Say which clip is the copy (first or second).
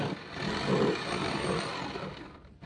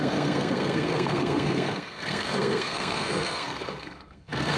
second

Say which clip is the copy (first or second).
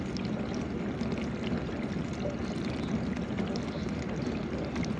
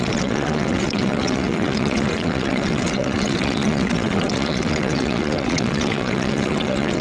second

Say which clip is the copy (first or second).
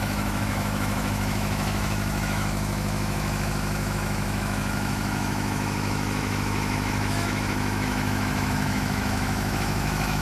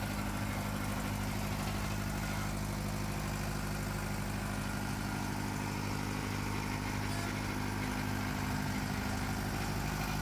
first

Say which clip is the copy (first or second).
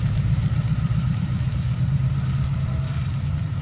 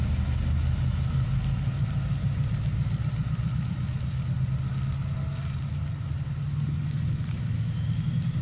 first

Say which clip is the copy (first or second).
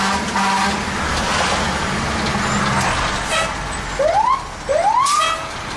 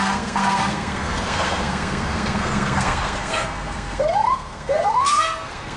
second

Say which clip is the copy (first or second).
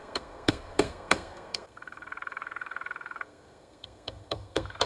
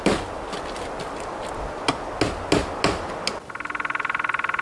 first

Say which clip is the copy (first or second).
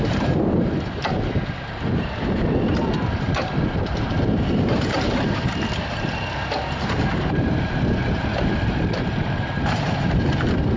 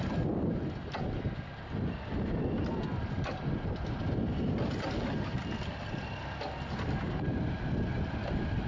first